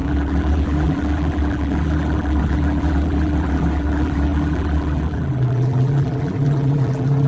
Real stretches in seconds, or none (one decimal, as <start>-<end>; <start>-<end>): none